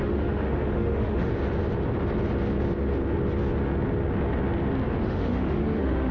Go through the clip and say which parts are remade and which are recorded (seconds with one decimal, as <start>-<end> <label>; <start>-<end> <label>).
0.0-1.3 remade; 1.3-5.0 recorded; 5.0-6.1 remade